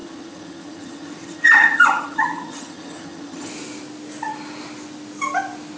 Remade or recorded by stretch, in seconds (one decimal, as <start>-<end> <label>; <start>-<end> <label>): 0.0-3.5 remade; 3.5-5.8 recorded